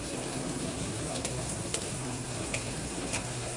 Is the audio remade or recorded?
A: remade